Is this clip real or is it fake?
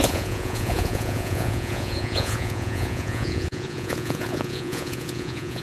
fake